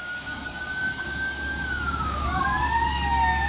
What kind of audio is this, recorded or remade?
remade